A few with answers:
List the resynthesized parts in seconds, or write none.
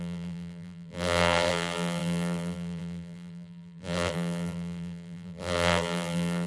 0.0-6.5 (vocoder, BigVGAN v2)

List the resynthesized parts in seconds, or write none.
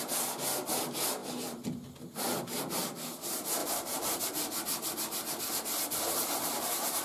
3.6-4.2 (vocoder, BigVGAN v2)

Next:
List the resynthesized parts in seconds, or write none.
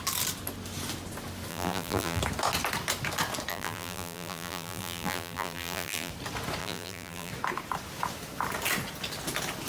1.5-2.2 (vocoder, BigVGAN v2); 3.5-6.1; 6.6-7.3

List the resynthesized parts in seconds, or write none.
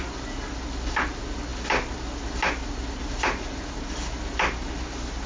none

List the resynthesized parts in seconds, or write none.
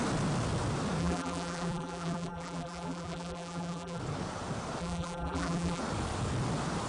1.0-4.0 (vocoder, BigVGAN v2); 4.8-5.8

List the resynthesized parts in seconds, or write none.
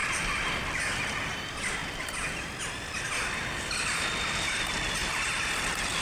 none